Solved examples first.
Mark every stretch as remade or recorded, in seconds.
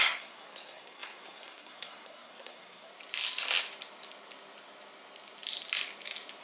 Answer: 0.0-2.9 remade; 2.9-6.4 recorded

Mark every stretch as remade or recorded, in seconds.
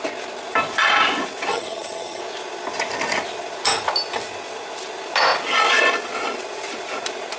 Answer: 0.0-1.5 recorded; 1.5-2.2 remade; 2.2-7.4 recorded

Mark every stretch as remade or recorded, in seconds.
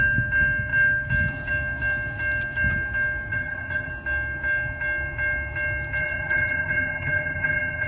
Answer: 0.0-3.3 recorded; 3.3-3.9 remade; 3.9-6.0 recorded; 6.0-7.9 remade